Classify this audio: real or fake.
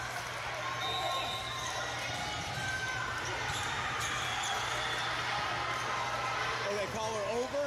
real